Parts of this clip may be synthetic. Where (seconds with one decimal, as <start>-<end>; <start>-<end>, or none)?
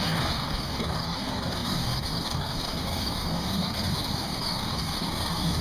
0.0-5.6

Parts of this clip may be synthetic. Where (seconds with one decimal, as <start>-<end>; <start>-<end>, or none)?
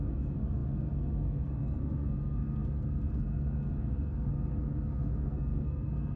0.0-6.2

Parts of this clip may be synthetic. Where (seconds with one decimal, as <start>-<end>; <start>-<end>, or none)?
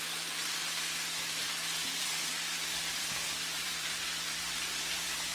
1.8-5.3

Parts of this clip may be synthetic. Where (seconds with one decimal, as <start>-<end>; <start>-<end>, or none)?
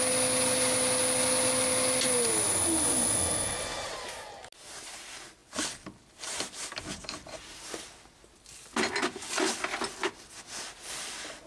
none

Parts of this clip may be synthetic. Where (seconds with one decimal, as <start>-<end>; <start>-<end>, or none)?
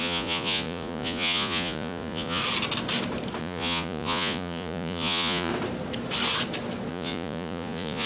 0.0-2.4; 3.4-5.5; 6.9-8.1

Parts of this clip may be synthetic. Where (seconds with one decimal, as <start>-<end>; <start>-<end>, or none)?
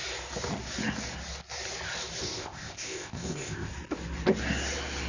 2.2-3.7